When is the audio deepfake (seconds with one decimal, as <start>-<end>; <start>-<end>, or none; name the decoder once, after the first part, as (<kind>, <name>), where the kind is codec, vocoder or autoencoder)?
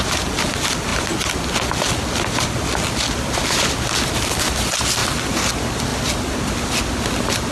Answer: none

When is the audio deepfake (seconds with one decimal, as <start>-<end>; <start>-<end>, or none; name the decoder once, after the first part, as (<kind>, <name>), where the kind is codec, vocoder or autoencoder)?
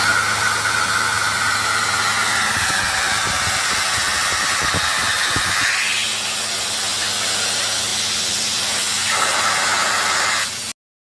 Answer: none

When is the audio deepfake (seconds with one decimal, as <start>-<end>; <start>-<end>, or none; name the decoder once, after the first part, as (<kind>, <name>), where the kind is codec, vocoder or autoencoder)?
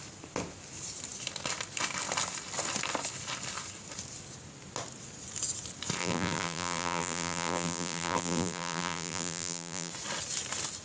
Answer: 6.0-9.9 (vocoder, BigVGAN v2)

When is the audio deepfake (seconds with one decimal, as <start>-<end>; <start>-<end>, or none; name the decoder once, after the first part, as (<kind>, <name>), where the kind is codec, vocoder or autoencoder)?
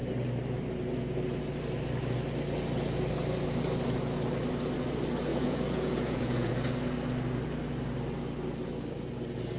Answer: 5.3-6.5 (vocoder, Vocos)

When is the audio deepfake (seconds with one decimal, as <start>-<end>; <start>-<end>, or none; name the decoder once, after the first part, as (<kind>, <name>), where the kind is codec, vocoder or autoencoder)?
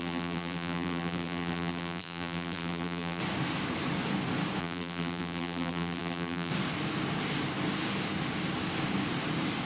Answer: 0.0-3.2 (vocoder, BigVGAN v2); 4.6-6.5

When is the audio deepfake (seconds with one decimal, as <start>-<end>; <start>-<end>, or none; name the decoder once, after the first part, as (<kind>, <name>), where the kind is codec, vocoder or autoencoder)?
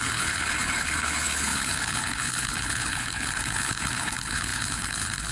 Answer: 0.0-5.3 (codec, HILCodec)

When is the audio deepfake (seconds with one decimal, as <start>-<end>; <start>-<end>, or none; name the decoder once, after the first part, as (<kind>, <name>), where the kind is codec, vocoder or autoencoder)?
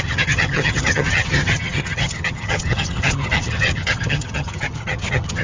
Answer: 0.0-5.4 (vocoder, HiFi-GAN)